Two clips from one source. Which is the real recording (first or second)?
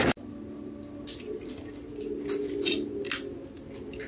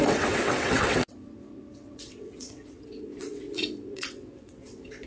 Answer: first